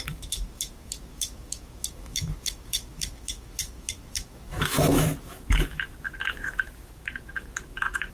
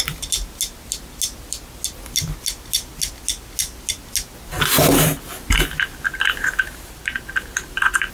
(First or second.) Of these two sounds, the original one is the second